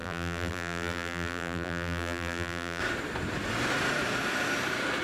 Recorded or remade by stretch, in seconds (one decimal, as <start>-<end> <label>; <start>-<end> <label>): 0.0-2.8 remade; 2.8-5.0 recorded